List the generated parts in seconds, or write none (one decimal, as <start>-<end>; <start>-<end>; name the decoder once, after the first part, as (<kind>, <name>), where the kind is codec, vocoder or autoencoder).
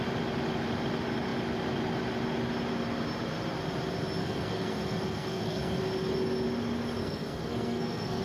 4.2-5.8 (codec, SNAC); 7.0-8.2